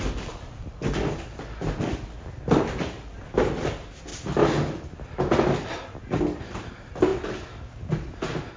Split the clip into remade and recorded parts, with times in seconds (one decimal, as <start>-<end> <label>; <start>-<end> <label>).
0.0-8.6 recorded